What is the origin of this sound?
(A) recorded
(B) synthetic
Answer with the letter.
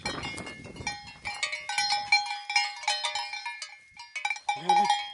A